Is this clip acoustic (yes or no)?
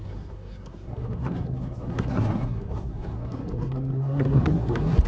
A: no